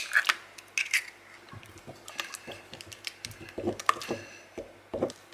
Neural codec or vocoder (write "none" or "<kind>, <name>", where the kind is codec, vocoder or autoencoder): none